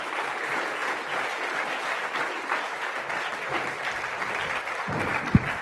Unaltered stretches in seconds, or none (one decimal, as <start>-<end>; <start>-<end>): 0.0-5.6